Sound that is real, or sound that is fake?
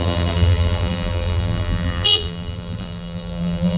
fake